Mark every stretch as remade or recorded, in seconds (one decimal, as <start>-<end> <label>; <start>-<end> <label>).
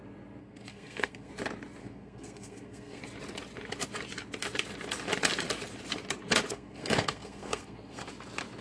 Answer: 0.0-0.4 recorded; 0.4-1.3 remade; 1.3-1.8 recorded; 1.8-3.0 remade; 3.0-6.5 recorded; 6.5-8.1 remade; 8.1-8.6 recorded